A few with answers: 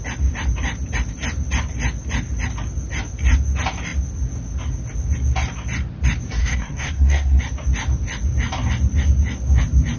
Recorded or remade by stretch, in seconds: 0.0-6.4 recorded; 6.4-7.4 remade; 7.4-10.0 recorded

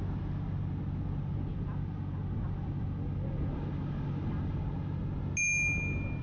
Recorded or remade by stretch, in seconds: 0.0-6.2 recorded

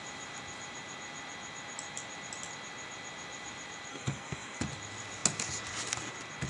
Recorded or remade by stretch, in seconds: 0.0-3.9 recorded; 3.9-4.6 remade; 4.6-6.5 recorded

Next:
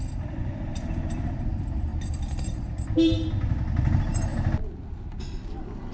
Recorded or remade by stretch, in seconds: 0.0-0.7 remade; 0.7-1.5 recorded; 1.5-1.9 remade; 1.9-3.5 recorded; 3.5-4.3 remade; 4.3-5.4 recorded; 5.4-5.9 remade

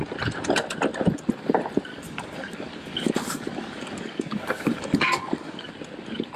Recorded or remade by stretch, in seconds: 0.0-1.9 recorded; 1.9-5.7 remade; 5.7-6.4 recorded